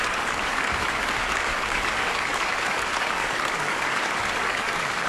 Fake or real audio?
fake